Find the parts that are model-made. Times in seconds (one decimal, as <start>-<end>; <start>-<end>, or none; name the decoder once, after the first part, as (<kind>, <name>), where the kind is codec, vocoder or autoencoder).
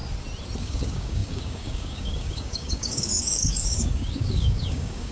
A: 0.6-5.1 (codec, DAC)